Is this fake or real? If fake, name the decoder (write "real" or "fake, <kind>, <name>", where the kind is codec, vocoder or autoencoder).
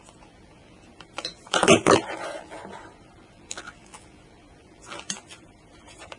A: fake, vocoder, BigVGAN v2